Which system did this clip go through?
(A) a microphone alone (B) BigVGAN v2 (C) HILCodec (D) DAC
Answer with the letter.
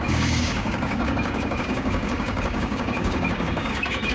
D